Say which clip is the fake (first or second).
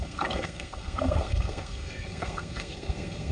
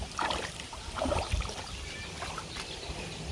first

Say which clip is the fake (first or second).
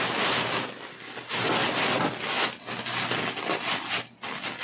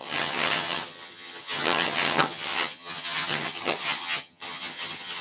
second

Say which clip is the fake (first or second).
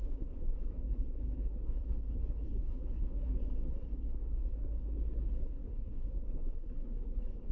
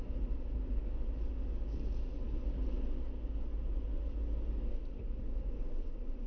first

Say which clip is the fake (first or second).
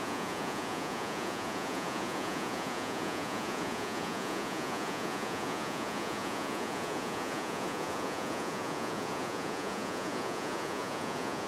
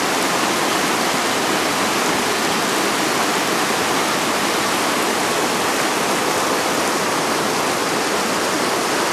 first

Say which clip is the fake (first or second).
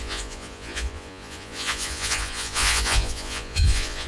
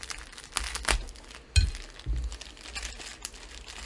first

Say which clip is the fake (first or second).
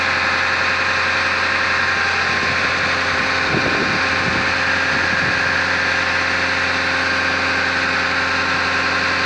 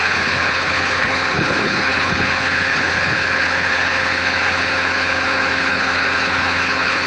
second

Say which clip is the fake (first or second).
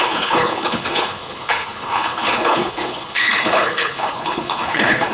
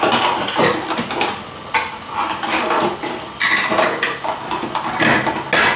first